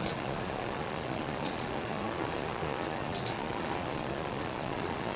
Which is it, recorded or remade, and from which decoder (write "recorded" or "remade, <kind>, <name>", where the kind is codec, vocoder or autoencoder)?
remade, vocoder, Vocos